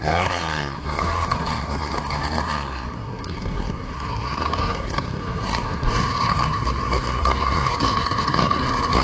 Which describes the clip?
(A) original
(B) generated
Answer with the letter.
B